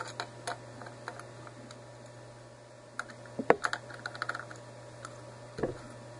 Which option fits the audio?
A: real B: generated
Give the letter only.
A